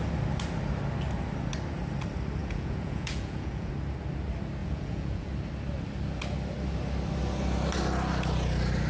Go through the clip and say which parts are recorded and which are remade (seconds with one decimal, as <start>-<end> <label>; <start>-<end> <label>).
0.0-2.4 recorded; 2.4-3.7 remade; 3.7-4.6 recorded; 4.6-5.3 remade; 5.3-8.9 recorded